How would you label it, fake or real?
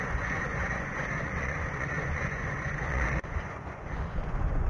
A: fake